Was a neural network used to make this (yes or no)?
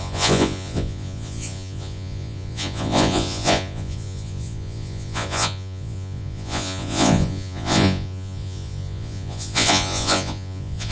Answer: yes